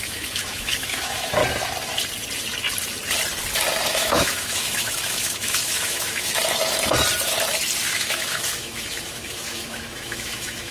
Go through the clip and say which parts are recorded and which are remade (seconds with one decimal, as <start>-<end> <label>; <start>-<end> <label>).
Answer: 0.0-1.4 remade; 1.4-3.9 recorded; 3.9-6.4 remade; 6.4-7.8 recorded; 7.8-10.7 remade